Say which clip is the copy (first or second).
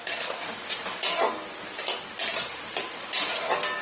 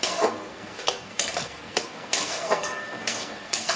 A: second